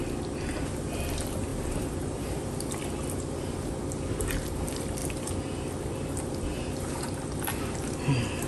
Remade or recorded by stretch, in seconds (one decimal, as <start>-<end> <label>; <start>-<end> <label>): 0.0-1.5 recorded; 1.5-2.5 remade; 2.5-6.5 recorded; 6.5-7.2 remade; 7.2-8.5 recorded